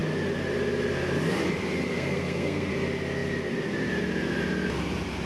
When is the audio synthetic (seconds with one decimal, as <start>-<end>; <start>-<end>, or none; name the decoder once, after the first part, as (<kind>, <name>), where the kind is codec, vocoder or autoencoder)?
1.9-2.7 (codec, SNAC)